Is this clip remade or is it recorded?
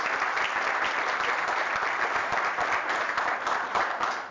recorded